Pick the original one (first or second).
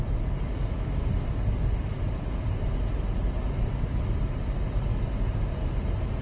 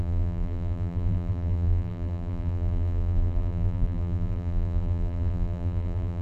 first